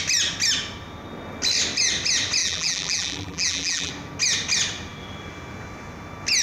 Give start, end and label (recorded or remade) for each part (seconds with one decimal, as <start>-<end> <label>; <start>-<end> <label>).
0.0-2.4 recorded; 2.4-3.9 remade; 3.9-6.4 recorded